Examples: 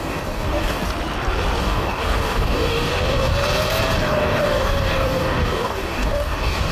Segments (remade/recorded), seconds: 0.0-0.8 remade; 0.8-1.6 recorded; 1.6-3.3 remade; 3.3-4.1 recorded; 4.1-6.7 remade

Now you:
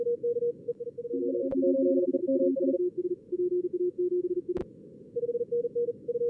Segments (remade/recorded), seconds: 0.0-6.3 recorded

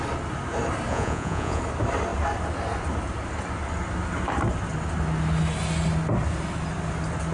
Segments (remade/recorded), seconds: 0.0-0.9 recorded; 0.9-1.6 remade; 1.6-7.3 recorded

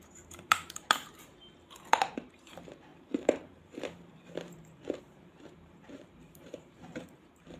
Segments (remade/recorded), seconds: 0.0-1.3 remade; 1.3-1.9 recorded; 1.9-7.6 remade

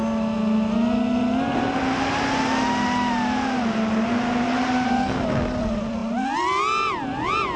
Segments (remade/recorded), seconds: 0.0-7.6 recorded

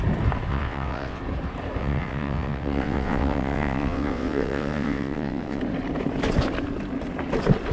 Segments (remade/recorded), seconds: 0.0-0.5 recorded; 0.5-1.2 remade; 1.2-1.8 recorded; 1.8-5.6 remade; 5.6-7.7 recorded

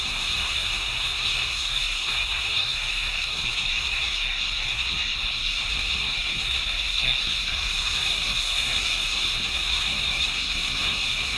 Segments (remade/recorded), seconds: 0.0-11.4 remade

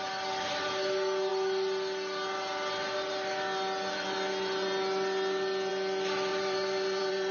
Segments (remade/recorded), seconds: 0.0-6.3 recorded; 6.3-7.3 remade